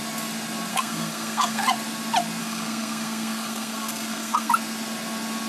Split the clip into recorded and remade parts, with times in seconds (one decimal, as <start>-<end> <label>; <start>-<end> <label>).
0.0-0.7 recorded; 0.7-1.7 remade; 1.7-2.4 recorded; 2.4-4.5 remade; 4.5-5.5 recorded